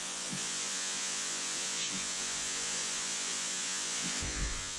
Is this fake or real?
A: fake